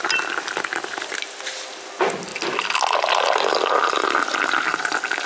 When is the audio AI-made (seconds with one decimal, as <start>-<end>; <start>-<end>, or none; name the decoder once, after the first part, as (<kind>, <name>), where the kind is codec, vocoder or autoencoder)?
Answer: none